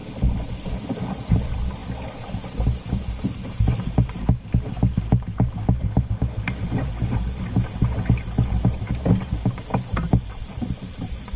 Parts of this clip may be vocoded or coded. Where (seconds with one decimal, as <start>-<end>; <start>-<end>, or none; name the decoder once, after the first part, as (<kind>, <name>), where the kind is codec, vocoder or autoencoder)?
none